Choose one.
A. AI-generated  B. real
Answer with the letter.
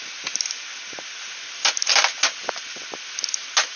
B